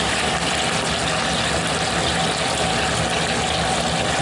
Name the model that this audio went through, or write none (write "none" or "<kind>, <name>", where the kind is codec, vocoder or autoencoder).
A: none